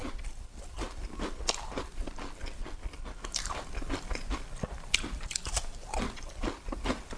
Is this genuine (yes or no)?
yes